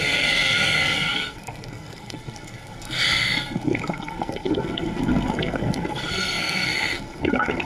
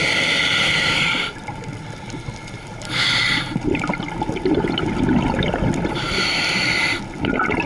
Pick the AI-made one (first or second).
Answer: first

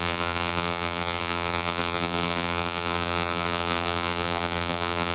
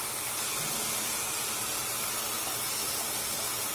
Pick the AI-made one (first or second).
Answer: first